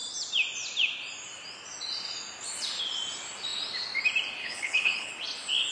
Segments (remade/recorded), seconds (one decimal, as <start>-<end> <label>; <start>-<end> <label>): 0.0-4.4 recorded; 4.4-5.1 remade; 5.1-5.7 recorded